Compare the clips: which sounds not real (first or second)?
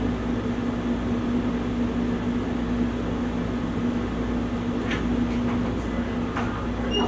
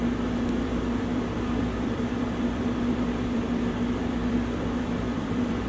second